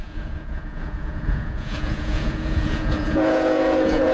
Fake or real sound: fake